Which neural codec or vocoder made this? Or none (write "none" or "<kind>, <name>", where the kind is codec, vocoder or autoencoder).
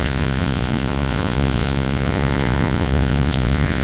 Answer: vocoder, Vocos